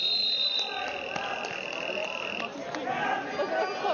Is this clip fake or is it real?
real